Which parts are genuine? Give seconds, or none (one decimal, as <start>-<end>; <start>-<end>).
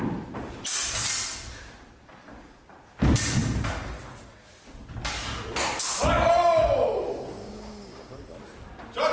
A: 0.0-7.4; 8.1-9.1